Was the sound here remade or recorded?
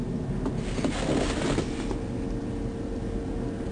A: recorded